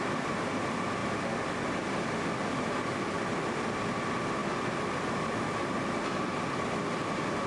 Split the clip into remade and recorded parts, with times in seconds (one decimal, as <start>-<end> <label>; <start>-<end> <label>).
0.0-7.5 recorded